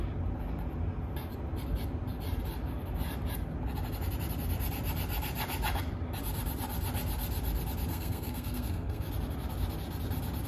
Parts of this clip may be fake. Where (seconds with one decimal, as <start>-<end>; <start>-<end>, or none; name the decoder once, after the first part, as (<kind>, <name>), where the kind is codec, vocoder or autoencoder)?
7.9-9.1 (codec, SNAC)